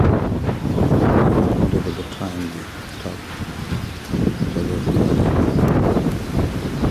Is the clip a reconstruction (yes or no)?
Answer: no